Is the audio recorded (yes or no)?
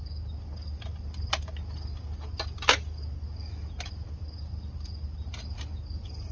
yes